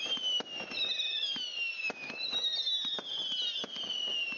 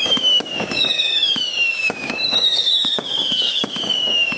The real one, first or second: first